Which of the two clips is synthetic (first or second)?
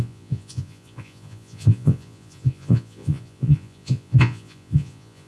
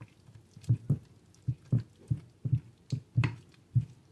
first